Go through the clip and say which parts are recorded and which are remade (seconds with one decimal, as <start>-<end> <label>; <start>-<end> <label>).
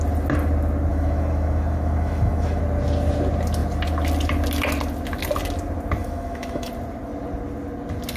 0.0-0.9 recorded; 0.9-2.6 remade; 2.6-6.0 recorded; 6.0-6.7 remade; 6.7-8.2 recorded